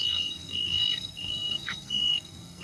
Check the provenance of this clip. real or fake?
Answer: fake